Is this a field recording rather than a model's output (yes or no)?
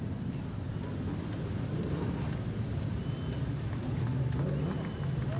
yes